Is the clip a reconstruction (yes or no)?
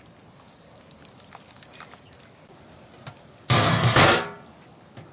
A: no